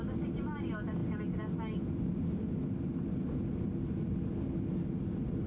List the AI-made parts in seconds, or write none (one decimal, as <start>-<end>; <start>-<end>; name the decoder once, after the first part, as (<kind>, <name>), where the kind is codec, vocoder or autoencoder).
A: none

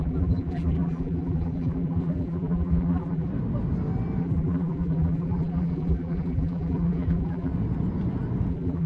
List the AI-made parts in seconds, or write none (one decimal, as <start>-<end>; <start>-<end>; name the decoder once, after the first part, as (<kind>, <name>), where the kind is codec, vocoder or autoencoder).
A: 0.0-3.3 (vocoder, BigVGAN v2); 4.2-7.5; 8.5-8.9

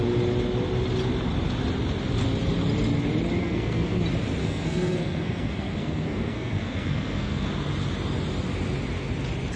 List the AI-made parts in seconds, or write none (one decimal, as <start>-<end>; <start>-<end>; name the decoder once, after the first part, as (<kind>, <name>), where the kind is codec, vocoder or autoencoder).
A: 3.4-4.0 (codec, SNAC); 4.4-7.5

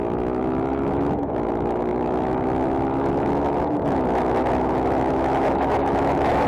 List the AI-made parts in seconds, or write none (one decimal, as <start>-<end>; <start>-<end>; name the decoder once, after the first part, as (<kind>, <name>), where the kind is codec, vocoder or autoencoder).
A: 0.0-6.5 (autoencoder, DAC-VAE)

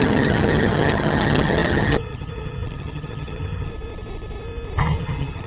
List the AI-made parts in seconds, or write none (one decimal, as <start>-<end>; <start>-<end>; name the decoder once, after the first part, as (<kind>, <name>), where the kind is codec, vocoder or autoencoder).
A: 0.0-3.7 (vocoder, HiFi-GAN); 5.0-5.5

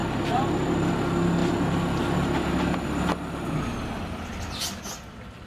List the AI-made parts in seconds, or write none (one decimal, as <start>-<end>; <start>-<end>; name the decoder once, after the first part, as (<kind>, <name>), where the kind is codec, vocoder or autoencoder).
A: none

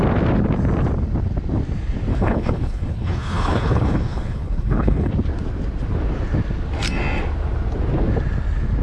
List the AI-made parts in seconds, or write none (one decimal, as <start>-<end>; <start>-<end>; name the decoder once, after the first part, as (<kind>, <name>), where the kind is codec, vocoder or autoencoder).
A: 2.1-5.1 (codec, HILCodec)

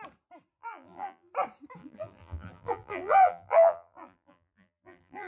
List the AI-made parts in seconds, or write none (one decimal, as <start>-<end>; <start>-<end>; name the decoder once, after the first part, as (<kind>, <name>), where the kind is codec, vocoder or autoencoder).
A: 0.6-1.3 (vocoder, BigVGAN v2); 1.8-5.3